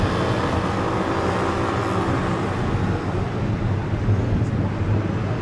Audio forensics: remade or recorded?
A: recorded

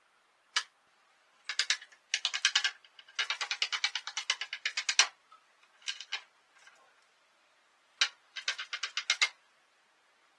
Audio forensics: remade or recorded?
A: recorded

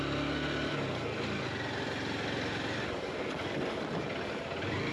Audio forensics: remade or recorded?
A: recorded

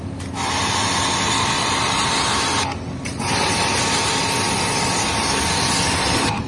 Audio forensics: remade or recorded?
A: recorded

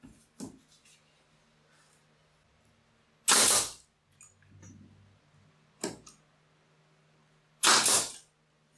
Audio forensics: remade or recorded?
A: recorded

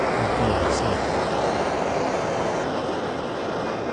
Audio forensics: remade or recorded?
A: recorded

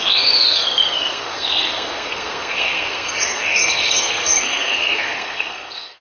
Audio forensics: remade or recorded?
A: remade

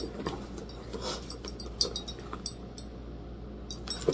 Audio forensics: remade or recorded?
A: recorded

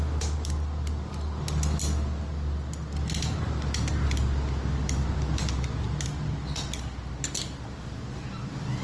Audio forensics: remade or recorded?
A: recorded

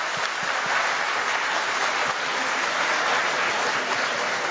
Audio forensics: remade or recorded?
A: recorded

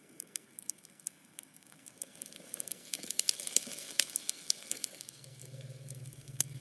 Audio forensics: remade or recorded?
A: remade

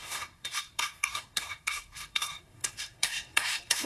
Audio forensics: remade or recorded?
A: remade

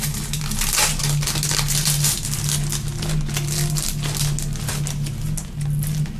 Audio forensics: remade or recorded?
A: recorded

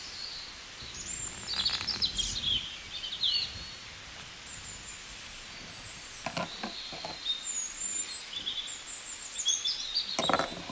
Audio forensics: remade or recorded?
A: recorded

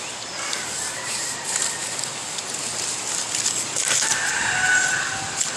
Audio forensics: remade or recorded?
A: recorded